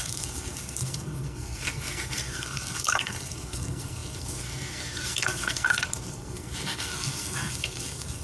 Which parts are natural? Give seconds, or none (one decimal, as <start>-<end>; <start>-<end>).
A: none